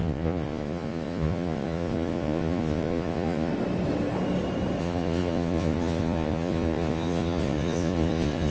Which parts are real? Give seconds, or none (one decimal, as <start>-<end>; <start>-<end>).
3.5-4.8